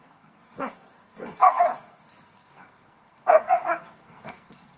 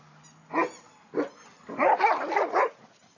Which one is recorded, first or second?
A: second